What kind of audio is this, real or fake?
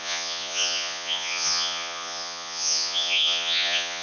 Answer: fake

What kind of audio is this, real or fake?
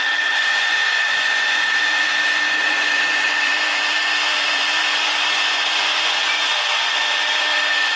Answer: fake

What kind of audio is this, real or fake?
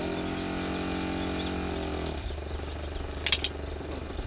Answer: real